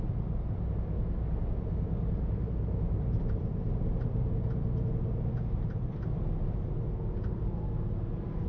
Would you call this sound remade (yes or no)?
no